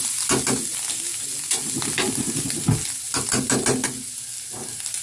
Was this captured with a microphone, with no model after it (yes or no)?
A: yes